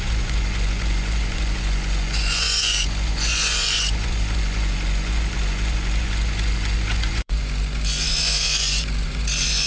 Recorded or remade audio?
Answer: remade